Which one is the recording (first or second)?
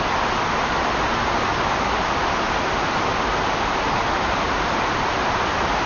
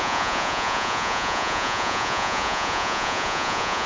first